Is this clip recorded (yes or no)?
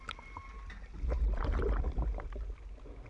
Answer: yes